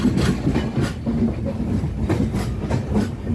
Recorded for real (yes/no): yes